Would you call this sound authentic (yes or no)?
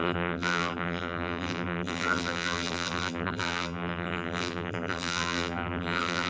no